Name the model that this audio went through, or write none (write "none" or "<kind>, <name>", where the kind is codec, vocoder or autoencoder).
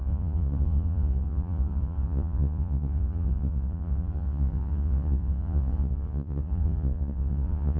vocoder, Vocos